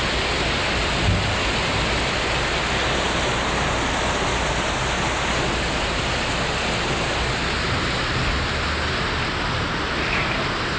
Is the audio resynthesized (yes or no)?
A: no